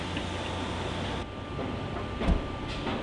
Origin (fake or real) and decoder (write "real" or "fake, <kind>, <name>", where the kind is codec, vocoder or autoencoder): real